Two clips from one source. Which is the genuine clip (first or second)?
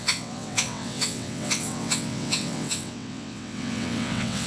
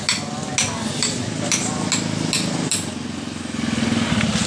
second